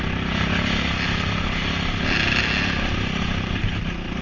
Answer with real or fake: real